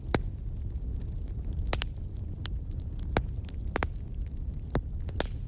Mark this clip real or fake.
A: real